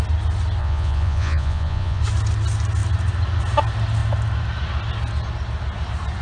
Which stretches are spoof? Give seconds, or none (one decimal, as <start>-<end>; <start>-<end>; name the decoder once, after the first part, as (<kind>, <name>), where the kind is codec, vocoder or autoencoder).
0.6-2.0 (vocoder, Vocos)